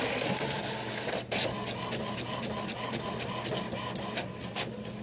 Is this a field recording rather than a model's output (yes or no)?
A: yes